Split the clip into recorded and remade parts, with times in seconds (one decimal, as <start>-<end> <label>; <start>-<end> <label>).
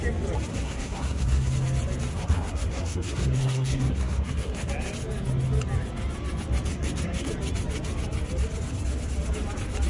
0.0-0.5 recorded; 0.5-1.5 remade; 1.5-2.1 recorded; 2.1-4.7 remade; 4.7-6.7 recorded; 6.7-7.3 remade; 7.3-9.9 recorded